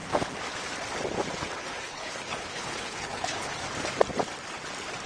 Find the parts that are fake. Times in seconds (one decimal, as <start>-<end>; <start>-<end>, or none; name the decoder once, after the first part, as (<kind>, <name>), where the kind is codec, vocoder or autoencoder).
1.6-3.5 (codec, HILCodec)